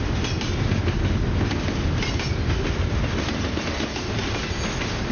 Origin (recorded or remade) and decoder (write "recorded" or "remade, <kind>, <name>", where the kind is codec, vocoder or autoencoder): recorded